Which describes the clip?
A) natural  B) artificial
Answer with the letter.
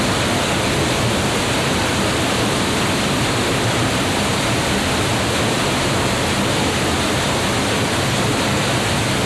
A